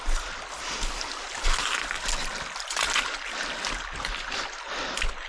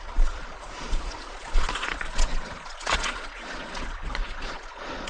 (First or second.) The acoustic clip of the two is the first